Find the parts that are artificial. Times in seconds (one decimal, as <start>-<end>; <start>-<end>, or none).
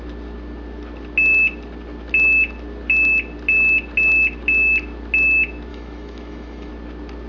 5.7-6.7